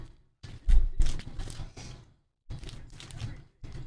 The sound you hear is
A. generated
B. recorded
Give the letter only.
A